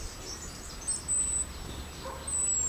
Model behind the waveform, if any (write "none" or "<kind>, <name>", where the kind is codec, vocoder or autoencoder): none